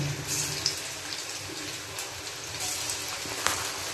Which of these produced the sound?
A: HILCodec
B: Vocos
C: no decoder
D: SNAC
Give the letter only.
C